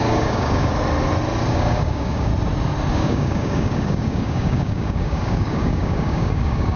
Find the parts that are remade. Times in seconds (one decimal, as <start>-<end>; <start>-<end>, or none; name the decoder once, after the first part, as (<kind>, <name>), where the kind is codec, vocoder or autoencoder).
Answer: 0.0-0.7 (codec, DAC); 1.5-2.3; 2.9-6.8